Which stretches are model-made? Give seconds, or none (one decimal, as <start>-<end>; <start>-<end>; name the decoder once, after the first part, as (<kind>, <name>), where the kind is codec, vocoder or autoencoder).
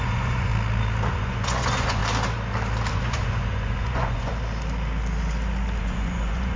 0.0-0.5 (vocoder, Vocos); 1.1-2.0; 2.9-4.3; 5.8-6.6